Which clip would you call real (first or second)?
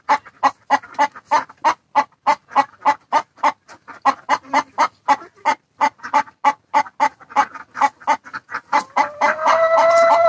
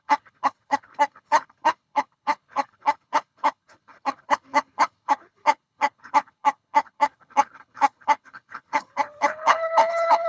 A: first